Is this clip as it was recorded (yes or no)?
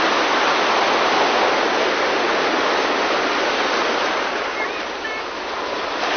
yes